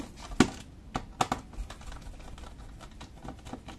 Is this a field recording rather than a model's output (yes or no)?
yes